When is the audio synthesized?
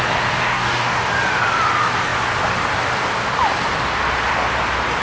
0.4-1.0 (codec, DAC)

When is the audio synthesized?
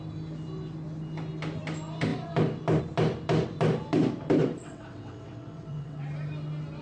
4.4-6.1 (vocoder, WaveNeXt)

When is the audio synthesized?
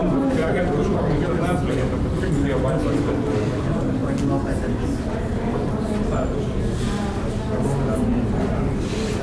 0.0-1.0 (vocoder, BigVGAN v2)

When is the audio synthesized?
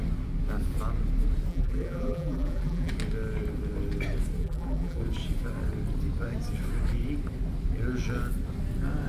1.5-2.9 (vocoder, BigVGAN v2); 4.4-5.0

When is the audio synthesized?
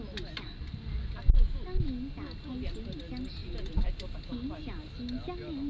3.4-4.2 (vocoder, BigVGAN v2)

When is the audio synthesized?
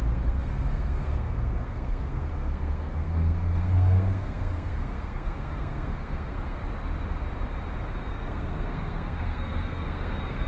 0.0-6.6 (codec, SNAC); 8.1-10.5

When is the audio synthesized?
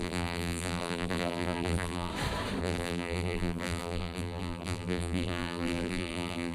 0.0-2.1 (vocoder, BigVGAN v2); 2.6-6.5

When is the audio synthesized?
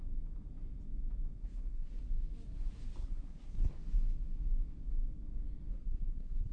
1.4-2.0 (codec, SNAC); 3.0-3.7; 5.7-6.5